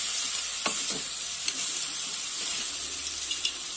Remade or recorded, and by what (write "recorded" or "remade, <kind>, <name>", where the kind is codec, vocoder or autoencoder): recorded